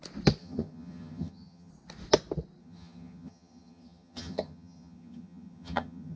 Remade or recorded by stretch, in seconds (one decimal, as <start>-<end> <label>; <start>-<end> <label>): 0.0-0.4 recorded; 0.4-1.7 remade; 1.7-2.6 recorded; 2.6-6.2 remade